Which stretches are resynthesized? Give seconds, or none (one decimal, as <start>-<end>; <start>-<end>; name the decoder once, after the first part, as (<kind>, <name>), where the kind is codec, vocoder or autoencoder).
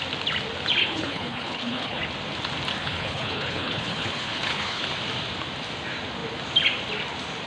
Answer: 0.8-2.0 (codec, HILCodec); 2.8-4.8